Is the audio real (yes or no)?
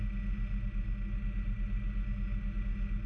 yes